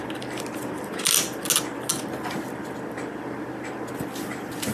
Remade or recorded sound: recorded